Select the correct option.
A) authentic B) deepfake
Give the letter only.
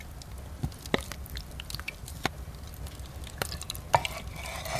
A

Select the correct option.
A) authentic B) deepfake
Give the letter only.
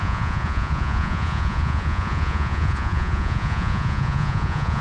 B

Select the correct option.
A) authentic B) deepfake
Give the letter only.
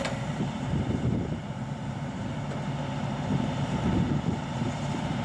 B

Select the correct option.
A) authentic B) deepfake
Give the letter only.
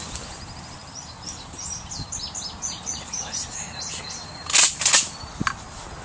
A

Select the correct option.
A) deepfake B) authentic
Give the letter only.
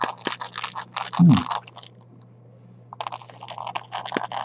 B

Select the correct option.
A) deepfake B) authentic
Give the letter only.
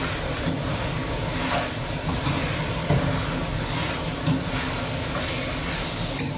B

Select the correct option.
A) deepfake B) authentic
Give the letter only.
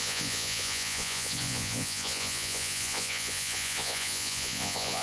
A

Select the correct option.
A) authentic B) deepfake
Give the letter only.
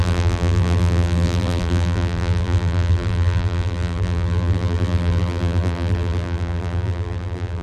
B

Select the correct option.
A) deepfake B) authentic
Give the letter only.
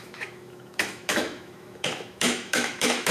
A